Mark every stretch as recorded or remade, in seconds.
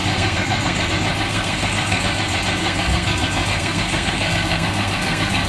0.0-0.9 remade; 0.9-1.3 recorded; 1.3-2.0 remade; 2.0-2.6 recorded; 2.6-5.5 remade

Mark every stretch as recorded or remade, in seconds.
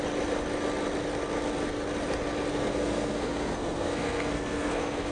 0.0-2.5 recorded; 2.5-5.1 remade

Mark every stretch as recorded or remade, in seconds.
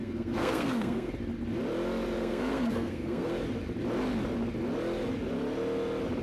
0.0-1.1 remade; 1.1-2.2 recorded; 2.2-3.3 remade; 3.3-6.2 recorded